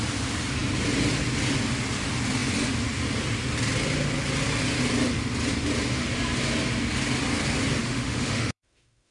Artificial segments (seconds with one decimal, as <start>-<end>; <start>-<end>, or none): 7.8-9.1